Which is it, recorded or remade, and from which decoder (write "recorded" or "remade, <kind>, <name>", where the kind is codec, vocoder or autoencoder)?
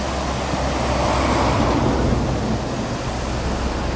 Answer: recorded